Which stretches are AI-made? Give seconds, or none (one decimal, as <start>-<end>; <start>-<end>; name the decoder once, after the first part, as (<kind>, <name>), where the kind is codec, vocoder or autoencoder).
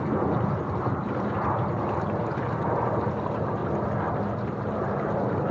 0.0-3.6 (vocoder, BigVGAN v2); 4.2-5.5